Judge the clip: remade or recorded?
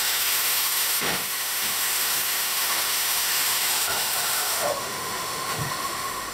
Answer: remade